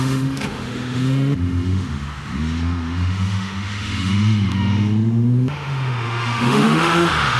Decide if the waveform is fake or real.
fake